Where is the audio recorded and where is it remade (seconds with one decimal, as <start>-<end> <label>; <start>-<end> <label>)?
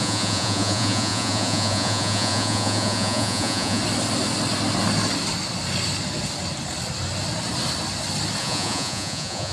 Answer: 0.0-3.8 remade; 3.8-8.4 recorded; 8.4-9.5 remade